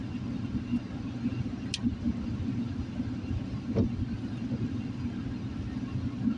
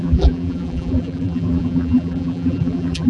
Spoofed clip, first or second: second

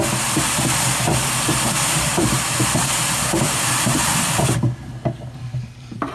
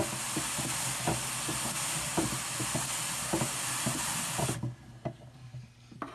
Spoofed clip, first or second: first